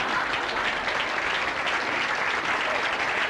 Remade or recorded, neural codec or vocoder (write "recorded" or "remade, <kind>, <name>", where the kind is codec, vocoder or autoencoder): recorded